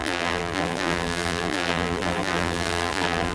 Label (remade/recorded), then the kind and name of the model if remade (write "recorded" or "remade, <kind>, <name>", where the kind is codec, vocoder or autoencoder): remade, vocoder, BigVGAN v2